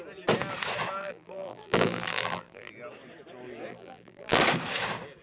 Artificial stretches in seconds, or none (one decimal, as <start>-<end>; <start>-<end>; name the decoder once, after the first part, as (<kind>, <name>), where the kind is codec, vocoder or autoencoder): 1.0-2.7 (vocoder, BigVGAN v2); 3.7-4.4